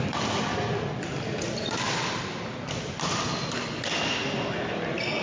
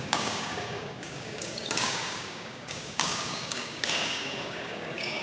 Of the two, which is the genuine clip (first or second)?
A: first